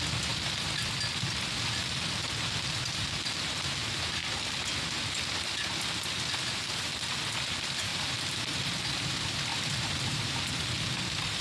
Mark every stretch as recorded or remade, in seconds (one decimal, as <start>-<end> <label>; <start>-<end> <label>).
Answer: 0.0-7.9 recorded; 7.9-8.7 remade; 8.7-9.5 recorded; 9.5-10.4 remade; 10.4-11.4 recorded